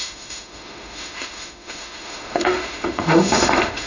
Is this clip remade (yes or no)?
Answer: yes